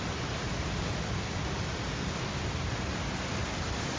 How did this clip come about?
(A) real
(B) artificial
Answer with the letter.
A